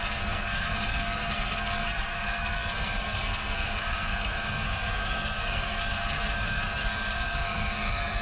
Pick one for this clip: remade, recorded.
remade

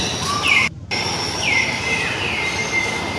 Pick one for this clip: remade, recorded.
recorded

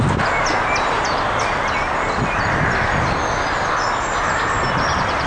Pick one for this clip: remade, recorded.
recorded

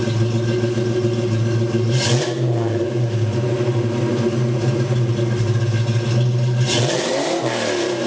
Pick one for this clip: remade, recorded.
recorded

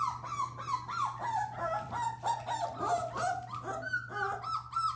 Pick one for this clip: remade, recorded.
recorded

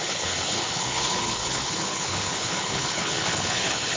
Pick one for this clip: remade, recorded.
remade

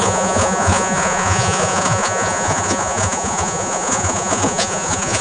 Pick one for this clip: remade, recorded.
remade